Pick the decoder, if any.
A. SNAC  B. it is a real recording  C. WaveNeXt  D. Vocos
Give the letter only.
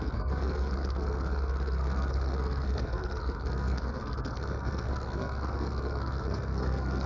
A